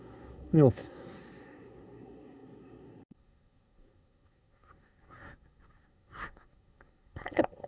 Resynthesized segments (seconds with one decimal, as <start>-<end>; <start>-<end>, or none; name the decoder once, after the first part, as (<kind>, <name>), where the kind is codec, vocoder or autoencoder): 0.0-7.7 (codec, SNAC)